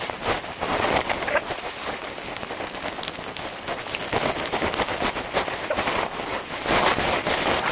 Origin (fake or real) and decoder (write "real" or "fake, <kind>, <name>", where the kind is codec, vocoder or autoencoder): real